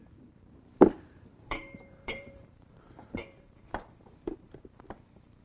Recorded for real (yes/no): no